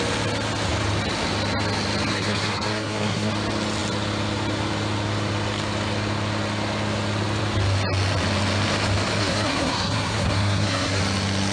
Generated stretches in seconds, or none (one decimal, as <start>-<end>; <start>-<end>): 2.1-3.3; 9.2-11.0